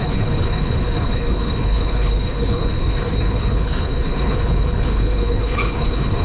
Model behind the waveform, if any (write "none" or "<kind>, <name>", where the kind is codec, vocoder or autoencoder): codec, HILCodec